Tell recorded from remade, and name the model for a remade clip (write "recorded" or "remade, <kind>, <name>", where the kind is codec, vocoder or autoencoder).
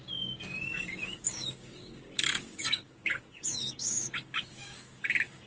remade, codec, DAC